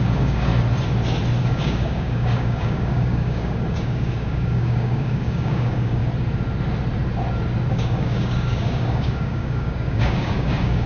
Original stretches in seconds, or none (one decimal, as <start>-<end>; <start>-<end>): 0.5-1.4; 6.0-7.7